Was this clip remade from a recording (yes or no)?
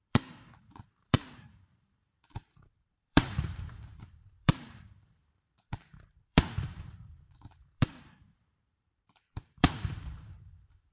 yes